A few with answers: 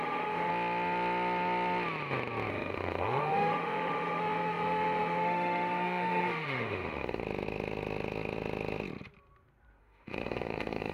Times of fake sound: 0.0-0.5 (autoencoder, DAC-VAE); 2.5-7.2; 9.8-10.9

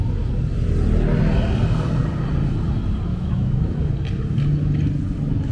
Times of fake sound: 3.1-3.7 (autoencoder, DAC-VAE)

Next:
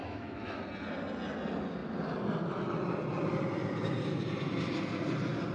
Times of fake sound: 0.0-0.6 (autoencoder, DAC-VAE)

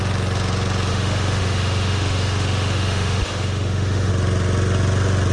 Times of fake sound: 0.9-4.1 (autoencoder, DAC-VAE)

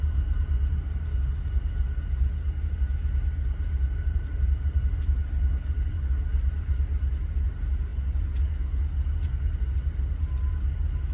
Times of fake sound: none